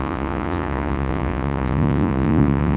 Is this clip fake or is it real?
fake